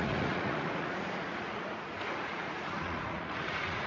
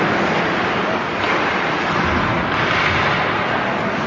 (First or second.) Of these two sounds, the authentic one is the second